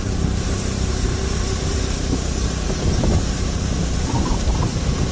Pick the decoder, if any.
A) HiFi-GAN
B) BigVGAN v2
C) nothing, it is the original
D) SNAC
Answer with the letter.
B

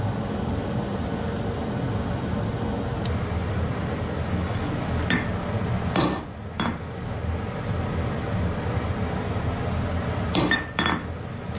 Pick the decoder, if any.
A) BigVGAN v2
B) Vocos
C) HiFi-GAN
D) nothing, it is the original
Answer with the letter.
D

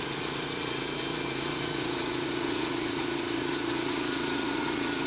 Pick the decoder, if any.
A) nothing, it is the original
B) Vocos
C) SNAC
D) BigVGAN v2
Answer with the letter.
B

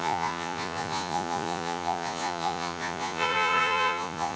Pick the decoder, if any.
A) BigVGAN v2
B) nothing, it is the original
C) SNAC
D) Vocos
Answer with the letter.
D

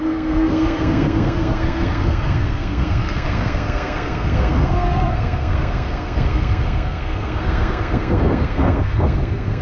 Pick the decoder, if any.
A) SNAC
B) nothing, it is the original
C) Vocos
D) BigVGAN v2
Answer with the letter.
A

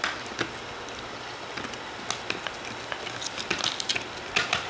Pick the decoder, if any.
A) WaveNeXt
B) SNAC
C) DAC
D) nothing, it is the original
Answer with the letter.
D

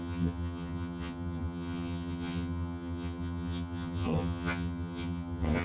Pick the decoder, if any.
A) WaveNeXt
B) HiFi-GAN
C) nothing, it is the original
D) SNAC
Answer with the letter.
B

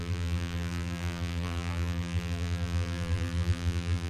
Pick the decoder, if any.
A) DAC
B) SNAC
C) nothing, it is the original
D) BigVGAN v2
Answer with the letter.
D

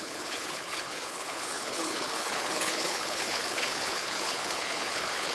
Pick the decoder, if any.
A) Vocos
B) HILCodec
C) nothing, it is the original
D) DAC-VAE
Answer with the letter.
B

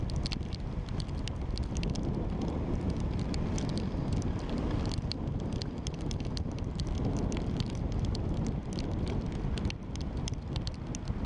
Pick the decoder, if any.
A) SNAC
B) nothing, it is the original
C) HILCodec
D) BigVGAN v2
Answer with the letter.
B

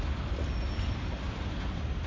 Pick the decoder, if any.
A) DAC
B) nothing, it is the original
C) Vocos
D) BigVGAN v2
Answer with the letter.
B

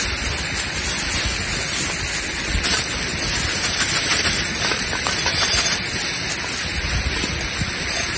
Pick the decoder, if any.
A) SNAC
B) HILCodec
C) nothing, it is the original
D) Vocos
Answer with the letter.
C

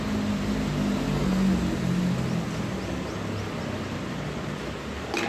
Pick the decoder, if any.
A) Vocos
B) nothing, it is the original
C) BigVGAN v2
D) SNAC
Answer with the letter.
B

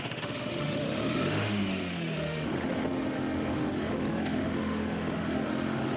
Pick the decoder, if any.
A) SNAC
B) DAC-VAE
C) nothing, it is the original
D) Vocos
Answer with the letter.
B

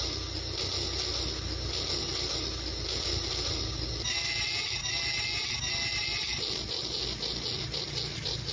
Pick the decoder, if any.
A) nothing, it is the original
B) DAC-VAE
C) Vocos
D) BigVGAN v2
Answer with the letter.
A